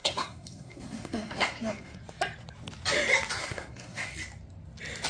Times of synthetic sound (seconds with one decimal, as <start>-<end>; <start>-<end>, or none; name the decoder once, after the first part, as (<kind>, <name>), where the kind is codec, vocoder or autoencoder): 0.0-2.0 (codec, SNAC); 3.4-4.1